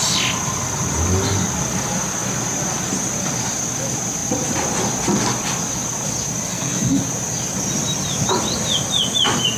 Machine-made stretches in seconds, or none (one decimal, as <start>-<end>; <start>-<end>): 6.5-7.0